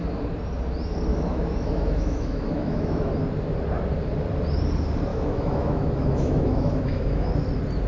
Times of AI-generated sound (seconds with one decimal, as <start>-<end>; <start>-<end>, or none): 1.1-3.1; 5.1-7.3